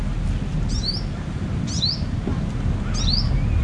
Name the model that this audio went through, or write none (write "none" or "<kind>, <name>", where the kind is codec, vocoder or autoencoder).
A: none